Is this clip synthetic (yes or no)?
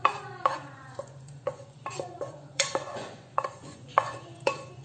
yes